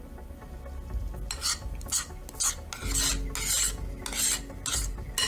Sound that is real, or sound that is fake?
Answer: real